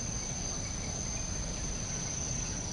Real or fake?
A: real